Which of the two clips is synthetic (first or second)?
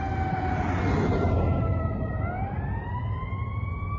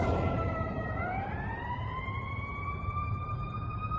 second